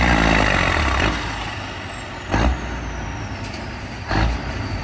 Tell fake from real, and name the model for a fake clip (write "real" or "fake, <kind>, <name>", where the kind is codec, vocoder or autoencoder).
real